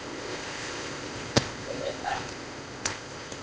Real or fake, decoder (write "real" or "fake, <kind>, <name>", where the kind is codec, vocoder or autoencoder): fake, codec, ZipCodec